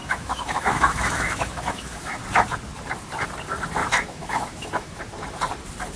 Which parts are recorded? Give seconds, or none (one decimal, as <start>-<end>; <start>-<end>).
2.2-3.8; 5.0-6.0